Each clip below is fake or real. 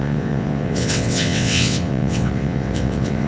fake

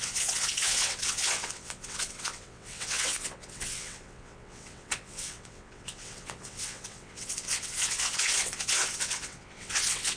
fake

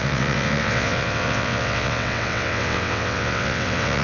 fake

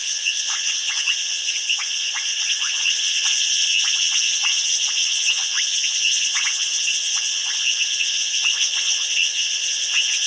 fake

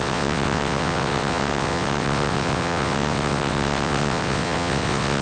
fake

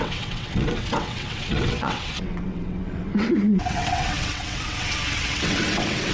fake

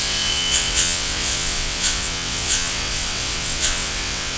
fake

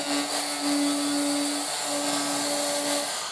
real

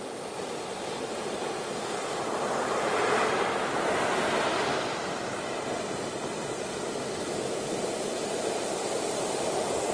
real